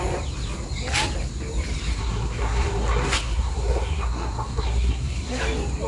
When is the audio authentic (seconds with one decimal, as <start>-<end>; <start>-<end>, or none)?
0.0-1.9; 5.4-5.9